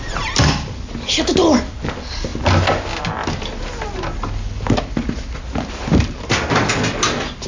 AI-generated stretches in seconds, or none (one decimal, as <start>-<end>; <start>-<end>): none